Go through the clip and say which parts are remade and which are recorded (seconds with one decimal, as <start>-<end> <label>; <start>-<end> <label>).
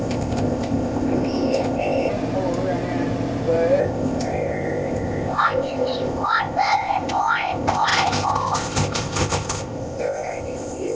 0.0-2.1 remade; 2.1-3.8 recorded; 3.8-10.9 remade